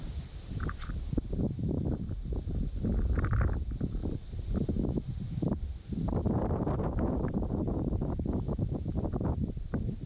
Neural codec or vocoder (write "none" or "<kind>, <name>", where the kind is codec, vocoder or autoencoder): none